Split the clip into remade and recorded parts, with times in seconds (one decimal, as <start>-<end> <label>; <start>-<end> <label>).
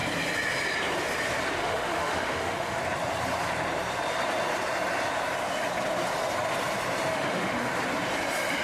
0.0-1.6 recorded; 1.6-2.8 remade; 2.8-7.1 recorded; 7.1-7.7 remade; 7.7-8.6 recorded